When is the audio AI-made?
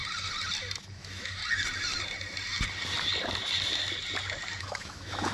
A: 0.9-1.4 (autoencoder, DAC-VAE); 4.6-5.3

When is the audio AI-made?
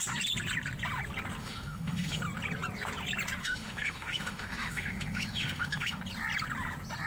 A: 1.4-2.2 (autoencoder, DAC-VAE); 3.4-6.0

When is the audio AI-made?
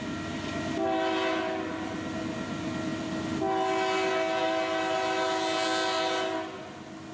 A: none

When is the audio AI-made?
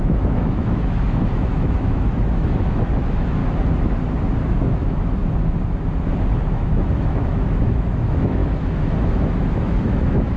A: 0.0-3.4 (autoencoder, DAC-VAE); 4.5-5.2; 6.5-10.4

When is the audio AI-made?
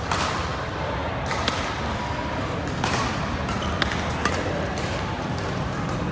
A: none